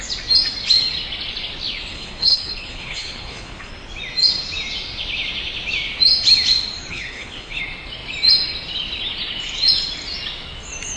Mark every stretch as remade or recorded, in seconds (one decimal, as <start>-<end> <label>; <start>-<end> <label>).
0.0-1.9 recorded; 1.9-3.7 remade; 3.7-6.9 recorded; 6.9-7.6 remade; 7.6-11.0 recorded